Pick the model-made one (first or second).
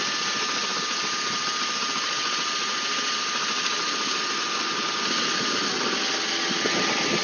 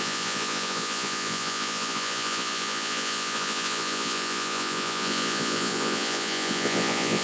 second